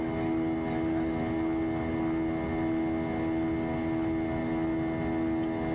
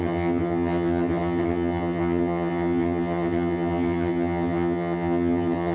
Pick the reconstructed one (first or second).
second